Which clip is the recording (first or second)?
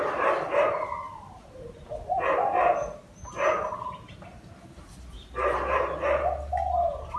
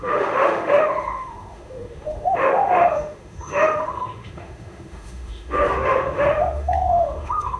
first